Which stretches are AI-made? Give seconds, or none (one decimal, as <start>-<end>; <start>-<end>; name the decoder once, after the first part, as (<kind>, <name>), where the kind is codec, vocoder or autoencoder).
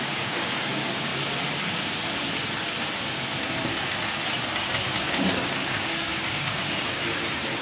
0.0-1.1 (codec, DAC); 4.9-6.6